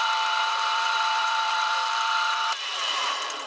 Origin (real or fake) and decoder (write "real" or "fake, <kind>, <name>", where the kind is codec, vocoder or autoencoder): fake, vocoder, BigVGAN v2